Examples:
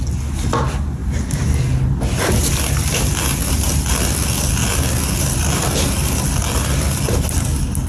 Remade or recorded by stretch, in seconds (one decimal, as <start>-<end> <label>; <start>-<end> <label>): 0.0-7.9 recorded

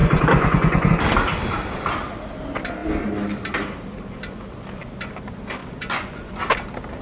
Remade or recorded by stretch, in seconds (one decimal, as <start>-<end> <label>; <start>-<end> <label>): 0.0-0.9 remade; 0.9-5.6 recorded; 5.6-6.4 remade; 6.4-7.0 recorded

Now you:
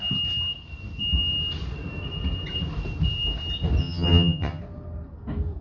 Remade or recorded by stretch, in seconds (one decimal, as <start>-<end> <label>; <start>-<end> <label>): 0.0-3.8 recorded; 3.8-4.6 remade; 4.6-5.6 recorded

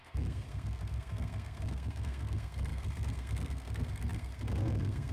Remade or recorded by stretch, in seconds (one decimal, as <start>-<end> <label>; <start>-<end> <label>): 0.0-5.1 remade